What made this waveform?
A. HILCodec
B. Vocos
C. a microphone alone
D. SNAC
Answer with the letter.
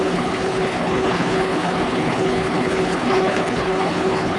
A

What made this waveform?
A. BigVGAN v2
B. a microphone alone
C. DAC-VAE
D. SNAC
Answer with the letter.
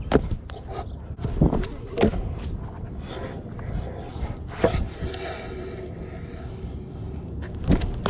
B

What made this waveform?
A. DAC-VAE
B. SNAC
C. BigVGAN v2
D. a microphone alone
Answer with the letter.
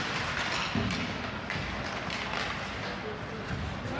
D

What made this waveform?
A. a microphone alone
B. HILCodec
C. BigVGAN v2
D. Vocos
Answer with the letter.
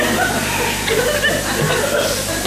A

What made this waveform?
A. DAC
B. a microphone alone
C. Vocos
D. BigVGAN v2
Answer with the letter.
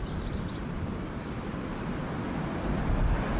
D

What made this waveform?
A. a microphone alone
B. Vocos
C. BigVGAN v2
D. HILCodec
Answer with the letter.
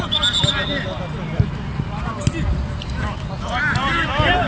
A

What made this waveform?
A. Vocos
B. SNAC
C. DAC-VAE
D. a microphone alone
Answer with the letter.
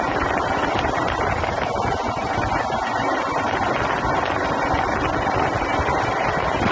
D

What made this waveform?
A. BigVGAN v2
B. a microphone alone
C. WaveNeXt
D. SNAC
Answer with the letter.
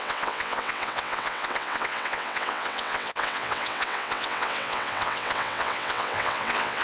C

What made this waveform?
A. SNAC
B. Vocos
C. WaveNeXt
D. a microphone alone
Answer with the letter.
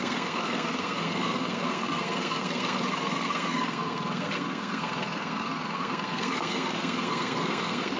A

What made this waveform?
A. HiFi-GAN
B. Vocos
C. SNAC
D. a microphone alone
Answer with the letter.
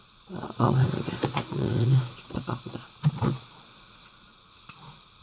B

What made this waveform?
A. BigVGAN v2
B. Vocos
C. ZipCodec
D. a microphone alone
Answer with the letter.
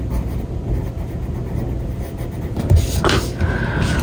D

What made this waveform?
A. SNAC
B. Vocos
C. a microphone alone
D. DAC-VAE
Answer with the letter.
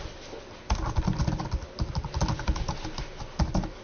C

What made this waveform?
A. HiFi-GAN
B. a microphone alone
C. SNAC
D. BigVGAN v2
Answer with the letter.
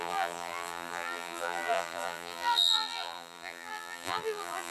D